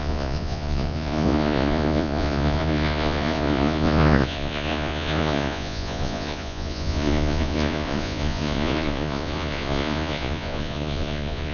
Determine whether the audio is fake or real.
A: fake